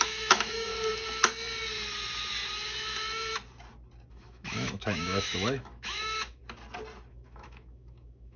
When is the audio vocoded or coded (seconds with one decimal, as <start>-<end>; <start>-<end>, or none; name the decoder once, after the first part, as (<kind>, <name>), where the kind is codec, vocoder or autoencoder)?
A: 0.0-0.7 (autoencoder, DAC-VAE); 4.1-6.4; 7.1-8.4